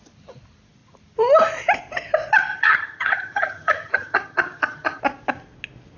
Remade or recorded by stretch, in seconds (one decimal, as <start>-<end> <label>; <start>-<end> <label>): 0.0-2.5 recorded; 2.5-5.0 remade; 5.0-6.0 recorded